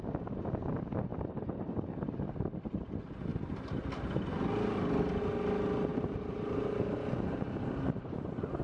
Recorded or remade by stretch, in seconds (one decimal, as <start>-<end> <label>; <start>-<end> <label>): 0.0-5.9 recorded; 5.9-8.6 remade

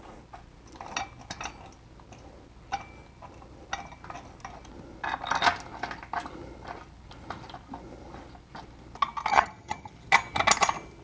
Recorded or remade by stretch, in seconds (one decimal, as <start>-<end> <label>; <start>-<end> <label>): 0.0-9.3 recorded; 9.3-9.9 remade; 9.9-11.0 recorded

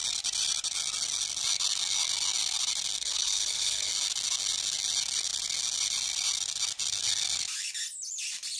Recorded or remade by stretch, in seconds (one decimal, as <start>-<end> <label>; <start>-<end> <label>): 0.0-3.0 recorded; 3.0-3.9 remade; 3.9-8.6 recorded

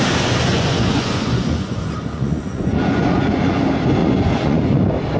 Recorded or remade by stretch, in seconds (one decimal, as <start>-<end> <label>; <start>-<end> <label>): 0.0-0.5 recorded; 0.5-3.6 remade; 3.6-4.0 recorded; 4.0-4.8 remade; 4.8-5.2 recorded

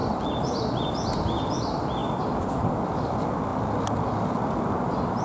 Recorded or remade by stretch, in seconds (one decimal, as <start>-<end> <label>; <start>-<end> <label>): 0.0-5.2 recorded

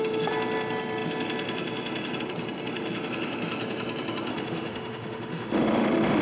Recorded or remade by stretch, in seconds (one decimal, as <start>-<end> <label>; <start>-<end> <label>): 0.0-4.3 recorded; 4.3-6.2 remade

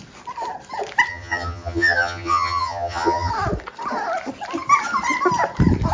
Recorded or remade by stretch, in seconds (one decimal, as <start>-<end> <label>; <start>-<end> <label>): 0.0-1.1 recorded; 1.1-3.3 remade; 3.3-5.9 recorded

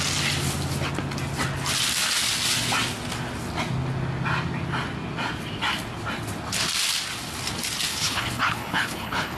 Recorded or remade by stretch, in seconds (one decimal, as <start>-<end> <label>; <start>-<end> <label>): 0.0-7.9 recorded; 7.9-9.4 remade